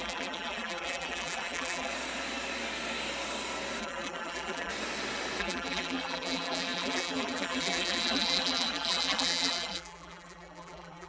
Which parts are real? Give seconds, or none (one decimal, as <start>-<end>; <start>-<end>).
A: 1.9-3.8; 4.7-5.4